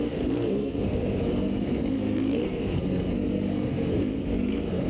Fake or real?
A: fake